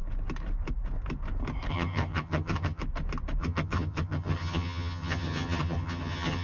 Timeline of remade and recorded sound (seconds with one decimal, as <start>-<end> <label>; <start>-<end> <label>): 0.0-1.7 recorded; 1.7-2.8 remade; 2.8-3.4 recorded; 3.4-6.4 remade